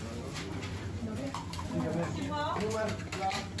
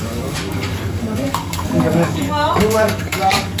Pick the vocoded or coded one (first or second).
second